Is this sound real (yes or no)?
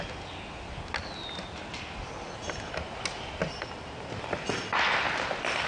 yes